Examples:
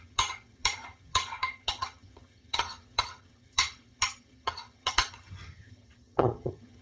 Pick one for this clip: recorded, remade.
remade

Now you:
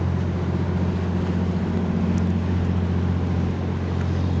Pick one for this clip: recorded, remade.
recorded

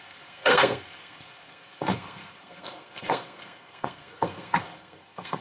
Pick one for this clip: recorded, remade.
remade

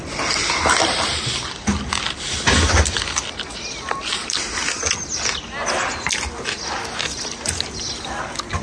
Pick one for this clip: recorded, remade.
recorded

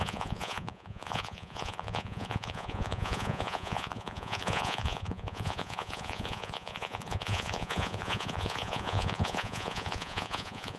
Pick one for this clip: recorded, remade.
remade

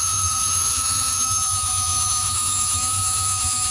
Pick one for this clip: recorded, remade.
remade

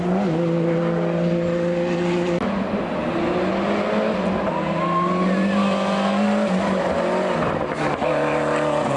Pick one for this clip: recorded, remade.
recorded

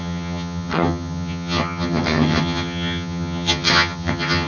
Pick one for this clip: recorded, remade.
remade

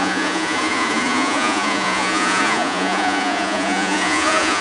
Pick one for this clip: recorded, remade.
remade